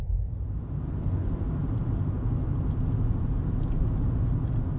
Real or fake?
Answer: real